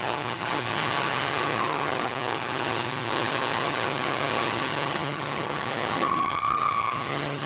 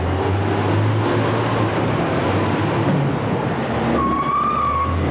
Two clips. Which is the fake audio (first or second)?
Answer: first